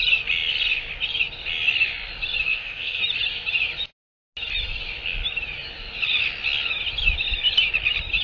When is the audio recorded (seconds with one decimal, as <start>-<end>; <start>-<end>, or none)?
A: 0.0-2.5; 3.0-8.2